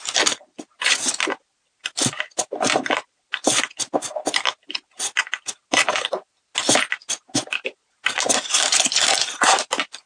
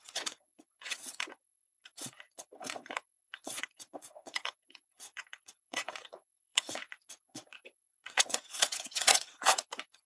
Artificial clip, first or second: second